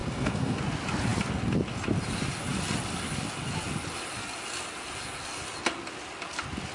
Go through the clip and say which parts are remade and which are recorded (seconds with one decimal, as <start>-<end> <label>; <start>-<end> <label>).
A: 0.0-0.6 remade; 0.6-6.7 recorded